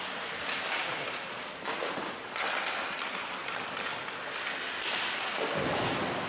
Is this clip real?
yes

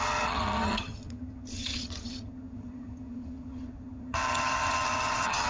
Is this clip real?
no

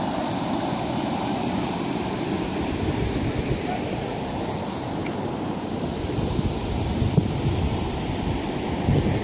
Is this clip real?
yes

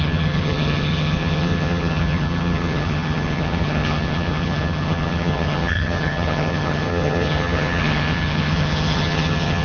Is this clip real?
no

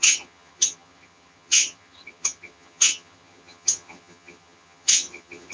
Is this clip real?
no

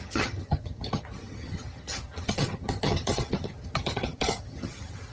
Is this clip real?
no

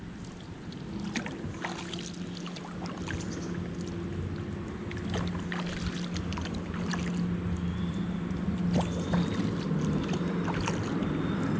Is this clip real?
yes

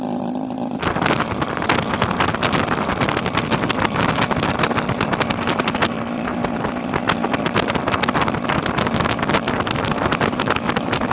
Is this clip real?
yes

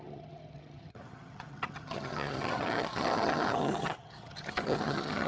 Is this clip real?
no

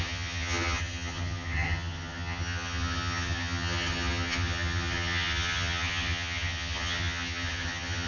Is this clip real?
no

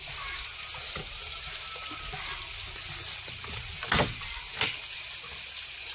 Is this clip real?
yes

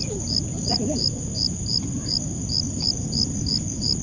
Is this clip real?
yes